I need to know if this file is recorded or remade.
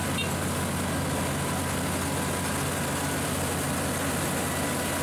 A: recorded